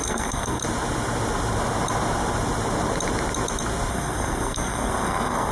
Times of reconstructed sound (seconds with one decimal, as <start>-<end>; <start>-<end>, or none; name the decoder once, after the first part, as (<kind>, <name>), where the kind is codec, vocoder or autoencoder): 0.0-0.6 (codec, SNAC); 3.9-5.5